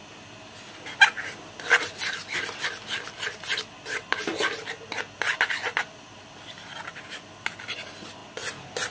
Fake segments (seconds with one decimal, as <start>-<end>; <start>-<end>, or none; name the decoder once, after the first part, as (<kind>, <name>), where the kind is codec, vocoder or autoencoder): none